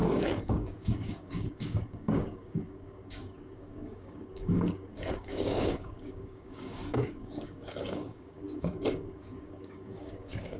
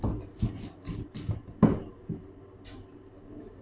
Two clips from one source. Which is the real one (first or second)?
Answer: second